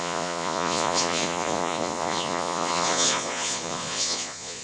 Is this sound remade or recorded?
remade